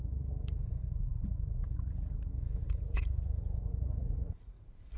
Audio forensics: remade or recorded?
remade